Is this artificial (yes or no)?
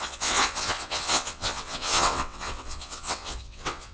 yes